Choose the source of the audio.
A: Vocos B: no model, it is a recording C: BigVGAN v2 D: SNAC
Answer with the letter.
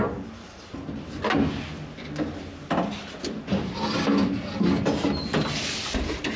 B